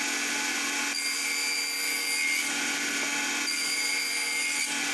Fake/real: real